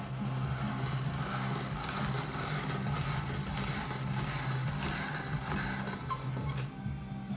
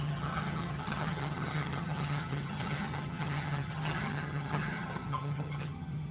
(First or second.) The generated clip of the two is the second